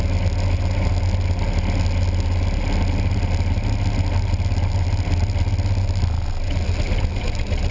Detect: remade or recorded recorded